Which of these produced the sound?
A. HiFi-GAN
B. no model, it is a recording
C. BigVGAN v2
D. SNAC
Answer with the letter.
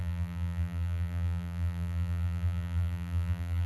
C